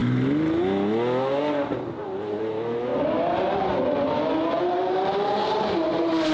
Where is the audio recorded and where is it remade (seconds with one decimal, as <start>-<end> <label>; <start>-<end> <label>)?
0.0-1.2 recorded; 1.2-2.9 remade; 2.9-4.6 recorded; 4.6-6.3 remade